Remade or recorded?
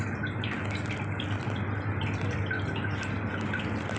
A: recorded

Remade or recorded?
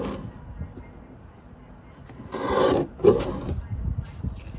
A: recorded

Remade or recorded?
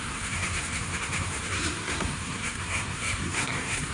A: remade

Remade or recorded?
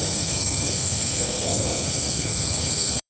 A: remade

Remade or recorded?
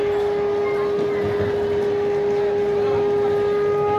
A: recorded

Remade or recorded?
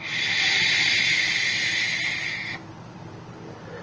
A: recorded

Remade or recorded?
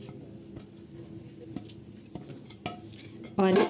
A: recorded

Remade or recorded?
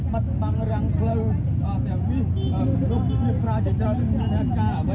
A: recorded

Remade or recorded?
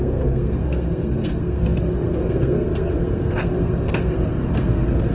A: remade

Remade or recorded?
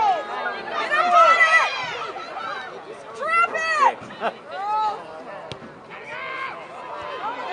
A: recorded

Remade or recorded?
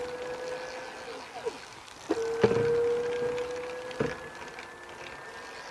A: recorded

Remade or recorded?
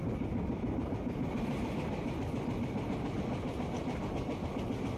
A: recorded